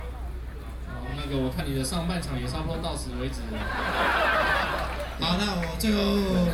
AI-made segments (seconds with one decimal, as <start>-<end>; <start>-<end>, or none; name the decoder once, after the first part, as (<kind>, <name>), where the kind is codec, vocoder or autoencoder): 1.1-1.6 (autoencoder, DAC-VAE)